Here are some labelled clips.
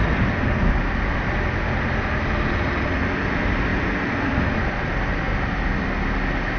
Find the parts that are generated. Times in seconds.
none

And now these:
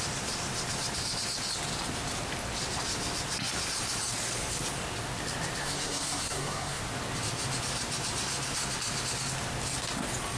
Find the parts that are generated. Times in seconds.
5.6-6.8

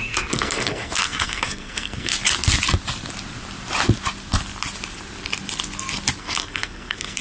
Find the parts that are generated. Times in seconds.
0.0-2.1; 6.2-7.2